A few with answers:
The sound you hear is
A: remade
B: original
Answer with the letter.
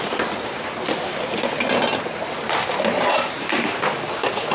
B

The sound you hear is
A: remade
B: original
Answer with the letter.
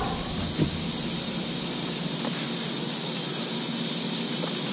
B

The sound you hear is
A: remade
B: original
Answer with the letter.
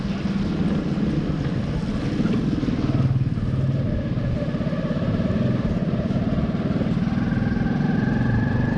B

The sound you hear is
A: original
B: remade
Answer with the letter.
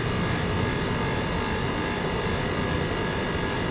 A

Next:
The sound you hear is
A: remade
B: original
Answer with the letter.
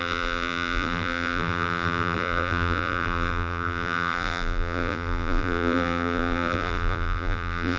A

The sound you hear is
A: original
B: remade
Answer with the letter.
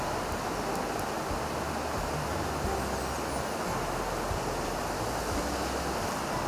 A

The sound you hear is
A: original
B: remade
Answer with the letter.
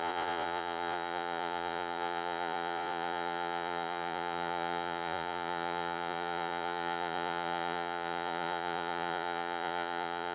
B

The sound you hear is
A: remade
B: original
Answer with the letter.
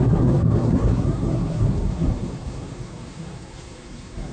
A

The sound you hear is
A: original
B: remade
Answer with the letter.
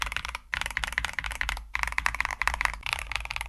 B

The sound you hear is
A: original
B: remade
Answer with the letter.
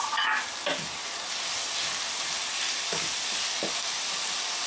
A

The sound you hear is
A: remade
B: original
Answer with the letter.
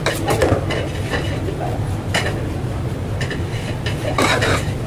A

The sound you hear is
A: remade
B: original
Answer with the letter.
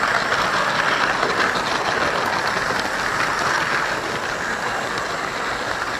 B